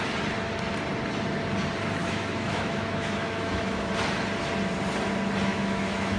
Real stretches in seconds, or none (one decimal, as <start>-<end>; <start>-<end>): 0.0-2.0; 3.9-5.5